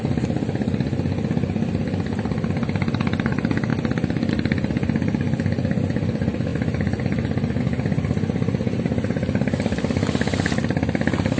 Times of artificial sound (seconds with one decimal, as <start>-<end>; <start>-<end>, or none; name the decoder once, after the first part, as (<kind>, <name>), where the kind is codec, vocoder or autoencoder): none